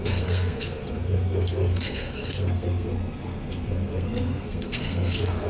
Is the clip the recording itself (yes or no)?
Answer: no